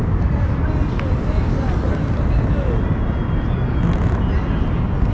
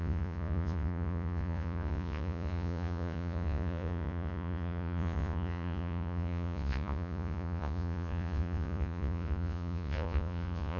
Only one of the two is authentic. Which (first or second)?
first